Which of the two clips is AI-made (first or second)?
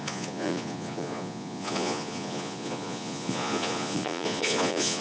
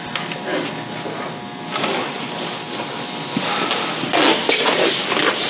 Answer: first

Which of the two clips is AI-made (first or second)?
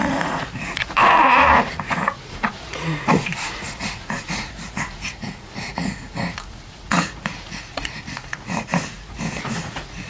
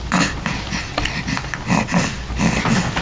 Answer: first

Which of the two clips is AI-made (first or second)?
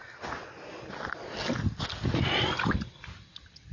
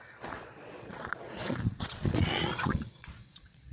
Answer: second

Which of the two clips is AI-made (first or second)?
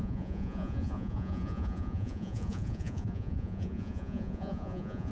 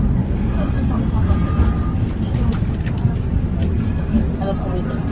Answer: first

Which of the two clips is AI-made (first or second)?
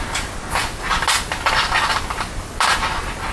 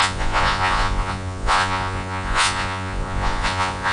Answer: second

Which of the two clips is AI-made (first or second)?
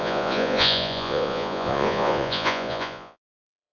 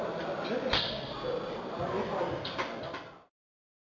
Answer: first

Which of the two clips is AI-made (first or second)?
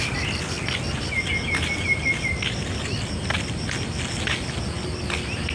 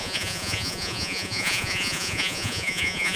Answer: second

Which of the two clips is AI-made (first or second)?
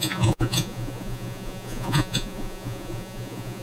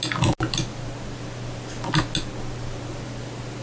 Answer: first